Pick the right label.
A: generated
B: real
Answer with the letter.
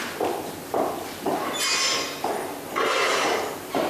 B